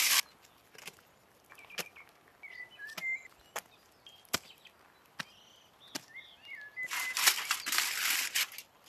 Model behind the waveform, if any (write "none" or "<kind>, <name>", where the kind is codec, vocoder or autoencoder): none